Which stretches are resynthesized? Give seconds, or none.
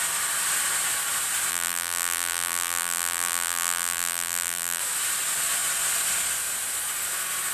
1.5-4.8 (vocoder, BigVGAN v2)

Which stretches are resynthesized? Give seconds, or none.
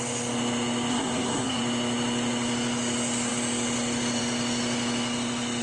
0.9-1.6 (codec, SNAC)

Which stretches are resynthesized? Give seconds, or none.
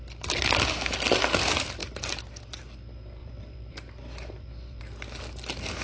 3.2-4.8 (vocoder, BigVGAN v2)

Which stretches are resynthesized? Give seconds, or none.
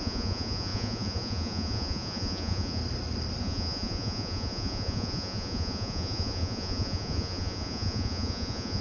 0.0-2.8 (vocoder, Vocos); 3.4-8.8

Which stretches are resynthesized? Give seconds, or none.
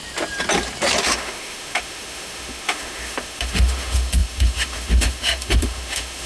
1.0-6.3 (autoencoder, DAC-VAE)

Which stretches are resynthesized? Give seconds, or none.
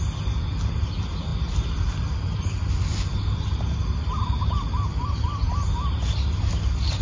1.3-3.2 (vocoder, BigVGAN v2); 4.9-6.1